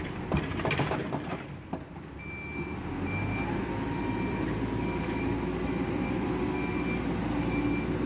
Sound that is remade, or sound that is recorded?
recorded